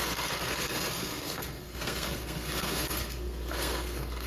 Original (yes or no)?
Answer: no